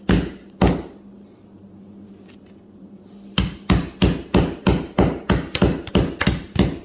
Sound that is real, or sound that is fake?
real